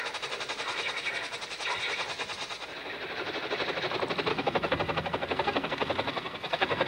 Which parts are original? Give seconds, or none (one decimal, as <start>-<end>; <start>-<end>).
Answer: 0.0-4.3